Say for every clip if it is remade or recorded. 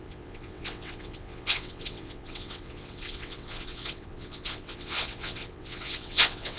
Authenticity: remade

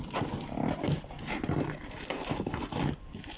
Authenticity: recorded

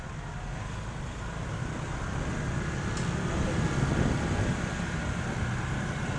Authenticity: recorded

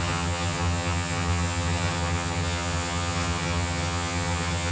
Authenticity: remade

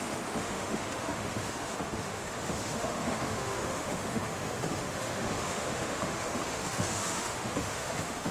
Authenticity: remade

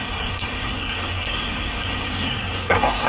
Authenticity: remade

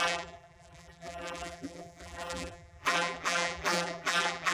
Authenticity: remade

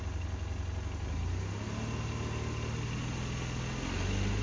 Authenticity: recorded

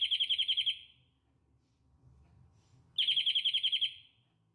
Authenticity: recorded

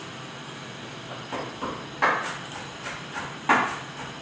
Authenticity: recorded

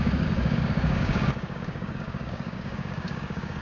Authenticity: remade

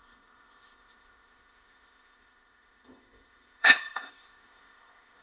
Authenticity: remade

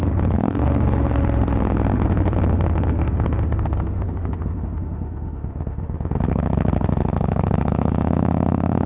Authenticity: remade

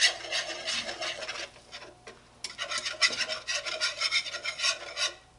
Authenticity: recorded